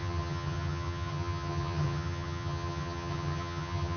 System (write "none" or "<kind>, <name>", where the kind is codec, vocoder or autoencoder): vocoder, HiFi-GAN